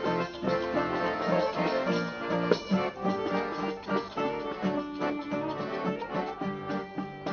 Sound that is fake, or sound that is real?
real